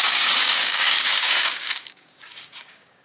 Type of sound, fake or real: fake